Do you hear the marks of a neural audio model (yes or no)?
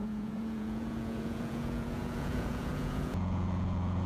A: yes